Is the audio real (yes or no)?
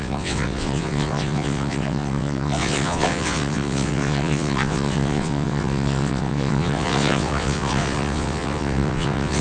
no